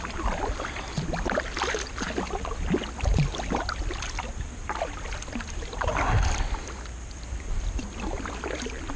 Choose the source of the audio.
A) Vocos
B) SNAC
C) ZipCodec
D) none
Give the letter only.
D